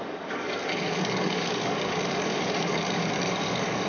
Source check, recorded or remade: remade